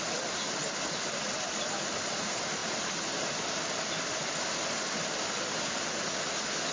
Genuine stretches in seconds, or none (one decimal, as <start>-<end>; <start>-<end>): 0.0-6.7